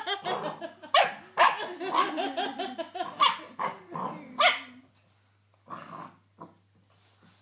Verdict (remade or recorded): recorded